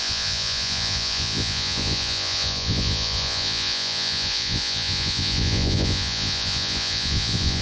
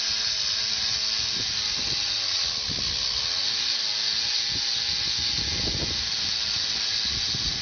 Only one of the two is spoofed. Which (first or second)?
first